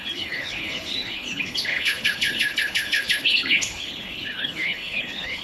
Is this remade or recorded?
remade